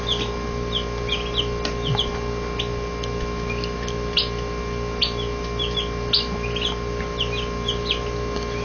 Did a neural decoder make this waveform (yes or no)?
no